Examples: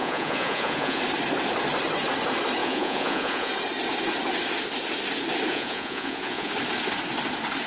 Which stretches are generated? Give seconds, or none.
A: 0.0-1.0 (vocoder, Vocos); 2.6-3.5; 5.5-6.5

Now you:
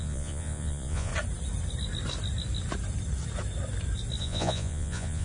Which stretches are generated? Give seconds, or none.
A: 0.0-1.1 (vocoder, Vocos); 4.2-5.2